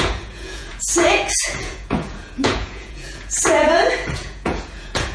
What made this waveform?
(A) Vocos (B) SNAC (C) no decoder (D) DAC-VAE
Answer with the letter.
A